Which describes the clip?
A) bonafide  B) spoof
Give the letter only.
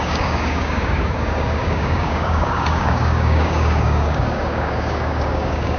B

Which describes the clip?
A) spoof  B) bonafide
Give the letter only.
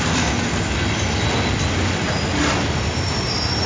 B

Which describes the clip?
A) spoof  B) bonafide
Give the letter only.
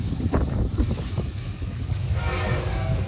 A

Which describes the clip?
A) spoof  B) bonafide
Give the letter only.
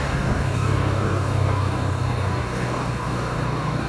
A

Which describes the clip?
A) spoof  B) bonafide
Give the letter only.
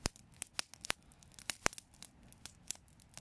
B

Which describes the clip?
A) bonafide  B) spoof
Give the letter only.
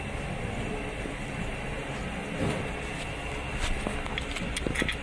A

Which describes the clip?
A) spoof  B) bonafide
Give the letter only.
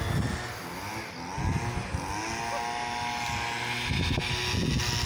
B